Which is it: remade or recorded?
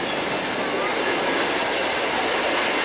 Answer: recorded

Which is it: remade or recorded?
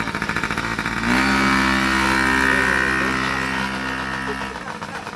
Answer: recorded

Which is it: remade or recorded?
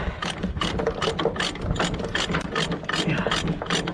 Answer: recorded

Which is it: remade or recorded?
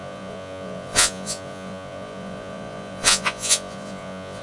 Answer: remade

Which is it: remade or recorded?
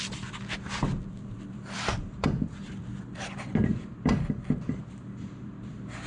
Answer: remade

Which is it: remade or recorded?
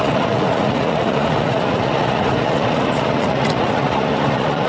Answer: remade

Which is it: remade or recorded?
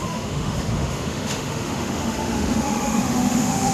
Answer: remade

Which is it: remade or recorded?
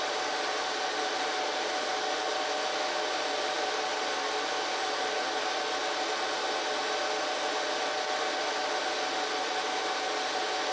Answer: recorded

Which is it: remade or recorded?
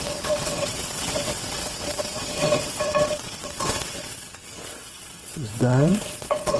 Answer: remade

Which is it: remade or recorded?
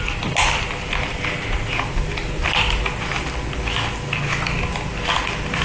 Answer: recorded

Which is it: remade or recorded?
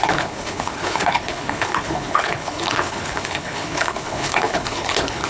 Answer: remade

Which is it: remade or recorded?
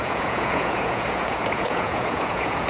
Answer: remade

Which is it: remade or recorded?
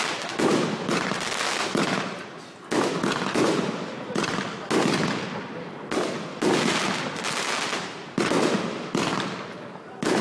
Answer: recorded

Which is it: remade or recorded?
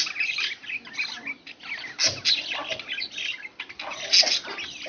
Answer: recorded